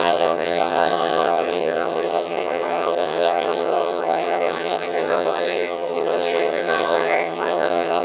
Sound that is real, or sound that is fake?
fake